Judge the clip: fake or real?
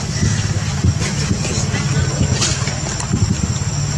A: real